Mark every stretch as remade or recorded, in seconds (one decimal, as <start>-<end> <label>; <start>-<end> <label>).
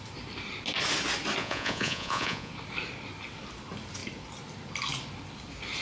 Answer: 0.0-1.4 recorded; 1.4-2.5 remade; 2.5-5.8 recorded